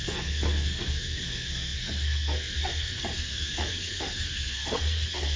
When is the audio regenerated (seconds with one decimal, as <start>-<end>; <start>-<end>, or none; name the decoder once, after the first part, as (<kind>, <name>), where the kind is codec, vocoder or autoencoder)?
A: 0.0-5.4 (codec, SNAC)